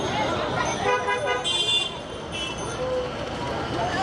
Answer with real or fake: real